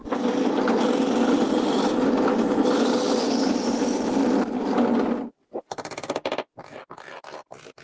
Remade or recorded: recorded